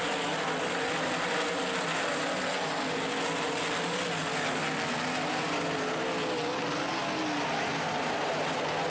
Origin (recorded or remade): recorded